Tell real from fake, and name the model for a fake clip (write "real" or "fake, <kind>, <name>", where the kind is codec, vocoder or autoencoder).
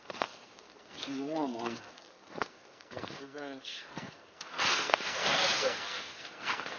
fake, codec, SNAC